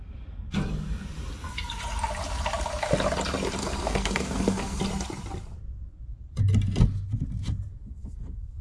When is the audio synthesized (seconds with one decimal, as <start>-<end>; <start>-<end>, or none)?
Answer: 3.6-4.8; 7.7-8.6